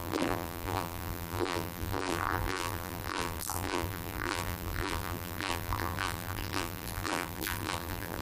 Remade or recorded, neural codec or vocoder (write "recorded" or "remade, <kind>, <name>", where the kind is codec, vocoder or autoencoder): remade, vocoder, BigVGAN v2